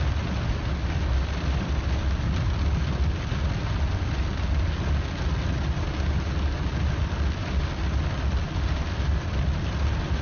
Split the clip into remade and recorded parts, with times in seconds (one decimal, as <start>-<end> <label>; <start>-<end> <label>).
0.0-10.2 recorded